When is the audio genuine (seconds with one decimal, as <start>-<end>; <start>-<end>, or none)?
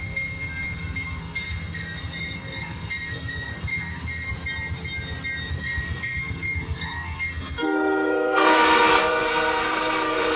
4.3-5.5